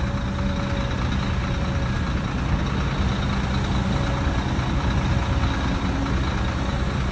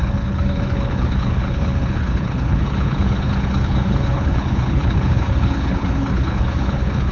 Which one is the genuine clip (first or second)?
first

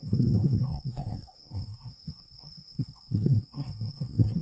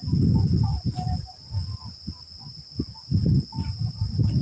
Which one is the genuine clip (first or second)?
second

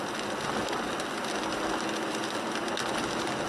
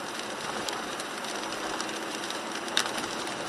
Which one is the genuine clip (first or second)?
first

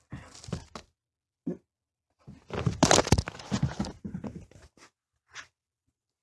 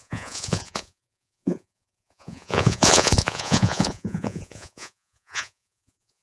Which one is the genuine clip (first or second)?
first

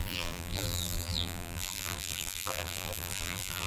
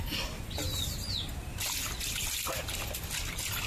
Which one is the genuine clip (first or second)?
second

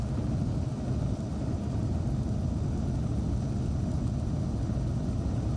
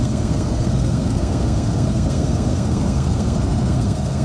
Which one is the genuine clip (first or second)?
first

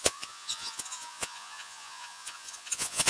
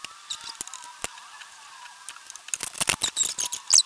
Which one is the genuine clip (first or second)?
second